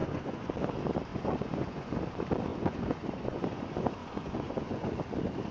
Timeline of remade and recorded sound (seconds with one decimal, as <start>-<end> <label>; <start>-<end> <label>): 0.0-0.5 remade; 0.5-1.1 recorded; 1.1-1.9 remade; 1.9-2.5 recorded; 2.5-3.6 remade; 3.6-4.0 recorded; 4.0-4.9 remade; 4.9-5.5 recorded